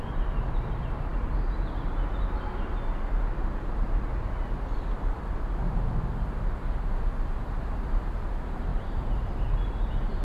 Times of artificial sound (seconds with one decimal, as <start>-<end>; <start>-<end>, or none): 8.7-10.2